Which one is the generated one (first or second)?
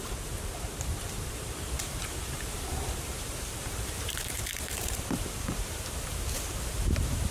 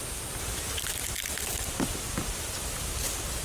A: first